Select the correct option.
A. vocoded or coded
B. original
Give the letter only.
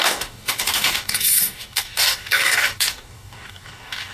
A